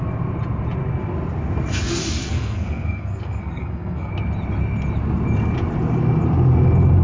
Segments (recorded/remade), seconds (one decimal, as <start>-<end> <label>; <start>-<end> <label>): 0.0-2.2 recorded; 2.2-4.1 remade; 4.1-7.0 recorded